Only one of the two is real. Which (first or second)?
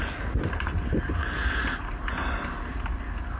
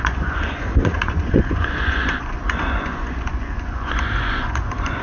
first